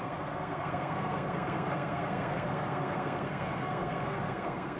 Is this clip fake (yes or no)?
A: yes